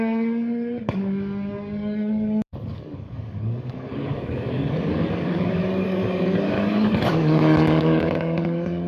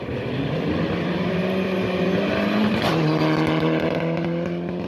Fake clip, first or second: first